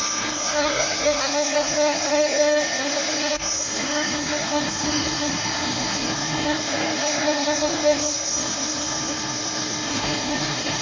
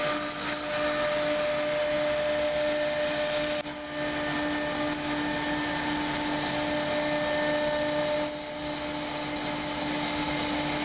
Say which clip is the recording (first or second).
second